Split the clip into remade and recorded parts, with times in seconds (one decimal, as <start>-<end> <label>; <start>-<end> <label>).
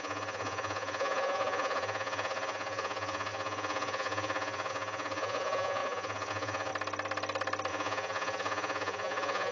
0.0-6.7 remade; 6.7-7.7 recorded; 7.7-9.5 remade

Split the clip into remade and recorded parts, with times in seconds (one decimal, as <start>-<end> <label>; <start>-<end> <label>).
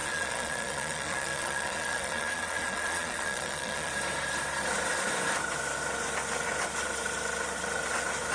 0.0-3.9 remade; 3.9-8.3 recorded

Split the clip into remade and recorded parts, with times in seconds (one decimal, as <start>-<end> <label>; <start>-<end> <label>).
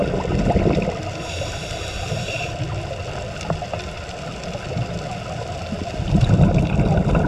0.0-7.3 recorded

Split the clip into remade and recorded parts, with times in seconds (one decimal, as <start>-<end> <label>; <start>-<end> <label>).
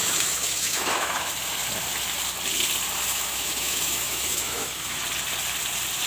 0.0-1.3 remade; 1.3-3.1 recorded; 3.1-5.0 remade; 5.0-6.1 recorded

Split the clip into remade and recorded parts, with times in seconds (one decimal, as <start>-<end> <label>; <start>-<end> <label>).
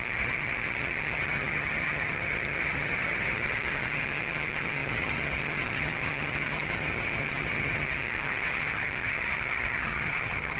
0.0-10.6 remade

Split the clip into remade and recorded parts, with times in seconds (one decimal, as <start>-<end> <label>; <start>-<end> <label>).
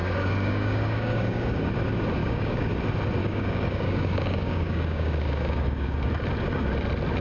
0.0-1.7 remade; 1.7-2.2 recorded; 2.2-2.7 remade; 2.7-3.2 recorded; 3.2-6.1 remade; 6.1-7.2 recorded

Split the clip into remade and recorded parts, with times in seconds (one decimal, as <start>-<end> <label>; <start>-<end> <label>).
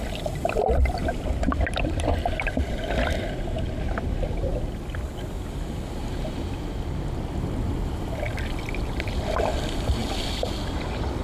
0.0-11.2 recorded